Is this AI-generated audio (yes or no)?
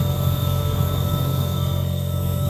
yes